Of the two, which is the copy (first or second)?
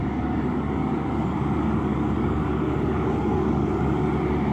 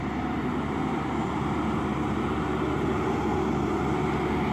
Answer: first